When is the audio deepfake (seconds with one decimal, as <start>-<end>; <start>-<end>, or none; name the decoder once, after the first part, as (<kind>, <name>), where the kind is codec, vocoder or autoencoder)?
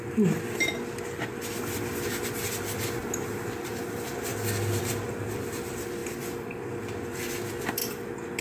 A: none